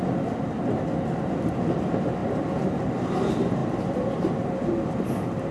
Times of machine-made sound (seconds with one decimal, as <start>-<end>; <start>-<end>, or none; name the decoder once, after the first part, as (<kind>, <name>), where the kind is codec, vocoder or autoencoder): none